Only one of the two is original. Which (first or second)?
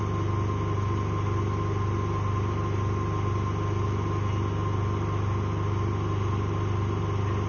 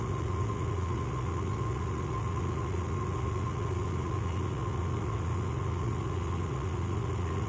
first